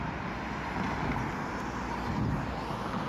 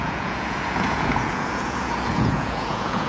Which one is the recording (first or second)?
first